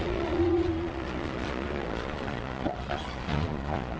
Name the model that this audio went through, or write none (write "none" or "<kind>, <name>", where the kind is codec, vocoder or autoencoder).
vocoder, Vocos